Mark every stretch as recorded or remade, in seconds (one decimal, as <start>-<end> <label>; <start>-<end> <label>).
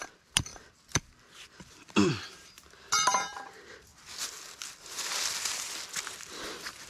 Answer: 0.0-3.9 remade; 3.9-6.4 recorded; 6.4-6.9 remade